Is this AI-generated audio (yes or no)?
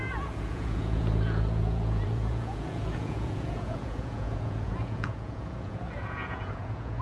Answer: yes